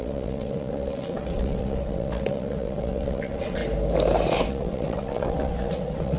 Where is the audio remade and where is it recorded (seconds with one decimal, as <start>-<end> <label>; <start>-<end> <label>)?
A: 0.0-3.6 remade; 3.6-4.3 recorded; 4.3-6.2 remade

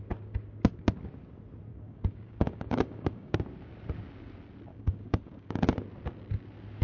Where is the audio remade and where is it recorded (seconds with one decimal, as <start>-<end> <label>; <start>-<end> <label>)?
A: 0.0-1.7 recorded; 1.7-3.4 remade; 3.4-4.7 recorded; 4.7-5.6 remade; 5.6-6.8 recorded

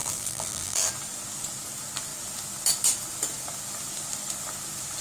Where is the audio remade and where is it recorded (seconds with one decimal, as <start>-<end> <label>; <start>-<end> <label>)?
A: 0.0-0.9 remade; 0.9-5.0 recorded

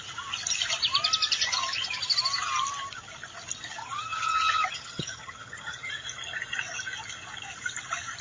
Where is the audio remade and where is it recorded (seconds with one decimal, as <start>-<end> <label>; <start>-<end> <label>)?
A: 0.0-3.8 recorded; 3.8-5.9 remade; 5.9-8.2 recorded